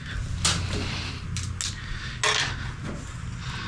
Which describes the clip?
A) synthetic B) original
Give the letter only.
B